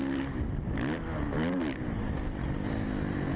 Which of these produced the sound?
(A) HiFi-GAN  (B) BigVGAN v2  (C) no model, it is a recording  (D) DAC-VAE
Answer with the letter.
C